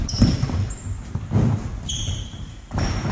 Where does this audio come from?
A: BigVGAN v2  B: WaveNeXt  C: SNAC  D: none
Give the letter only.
A